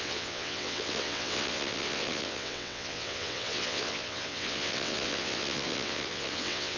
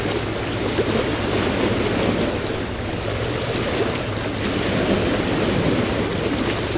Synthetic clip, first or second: first